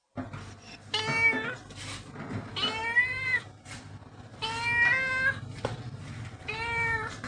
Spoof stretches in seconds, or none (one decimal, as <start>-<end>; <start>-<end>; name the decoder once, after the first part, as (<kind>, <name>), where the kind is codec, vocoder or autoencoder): none

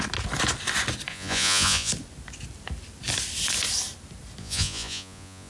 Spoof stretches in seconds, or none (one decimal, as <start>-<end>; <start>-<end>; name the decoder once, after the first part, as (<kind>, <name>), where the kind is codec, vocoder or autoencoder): 1.1-1.9 (vocoder, Vocos); 4.4-5.5

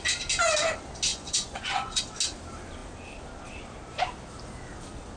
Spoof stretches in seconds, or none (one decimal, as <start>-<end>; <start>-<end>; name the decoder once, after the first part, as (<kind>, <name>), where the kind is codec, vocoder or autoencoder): 1.1-2.0 (vocoder, Vocos)

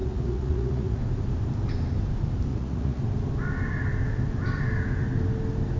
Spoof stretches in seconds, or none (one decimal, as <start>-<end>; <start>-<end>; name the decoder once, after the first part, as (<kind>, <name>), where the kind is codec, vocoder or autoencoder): 0.0-1.0 (vocoder, Vocos); 2.5-3.0